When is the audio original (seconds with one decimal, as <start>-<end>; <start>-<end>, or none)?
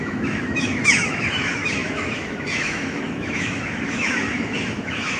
none